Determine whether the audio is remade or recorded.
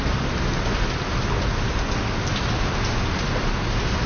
recorded